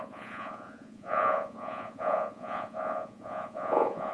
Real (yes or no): no